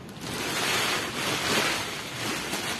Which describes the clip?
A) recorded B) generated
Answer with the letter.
A